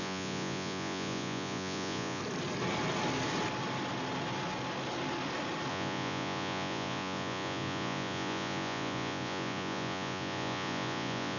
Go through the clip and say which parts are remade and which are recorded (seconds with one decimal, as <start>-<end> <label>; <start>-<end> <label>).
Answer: 0.0-2.2 remade; 2.2-5.7 recorded; 5.7-11.4 remade